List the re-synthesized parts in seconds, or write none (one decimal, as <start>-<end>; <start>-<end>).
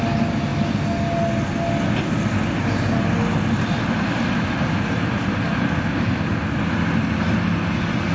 none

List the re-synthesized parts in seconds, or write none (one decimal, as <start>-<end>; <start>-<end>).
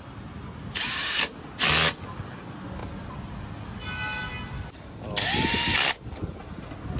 none